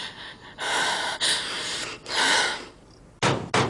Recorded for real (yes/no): yes